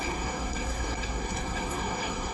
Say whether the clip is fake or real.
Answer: fake